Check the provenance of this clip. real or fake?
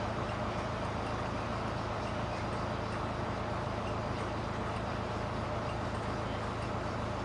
real